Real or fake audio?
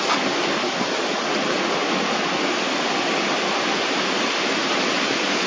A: real